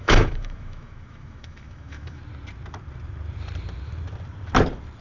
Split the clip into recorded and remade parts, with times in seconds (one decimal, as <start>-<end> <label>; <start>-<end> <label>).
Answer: 0.0-2.2 remade; 2.2-5.0 recorded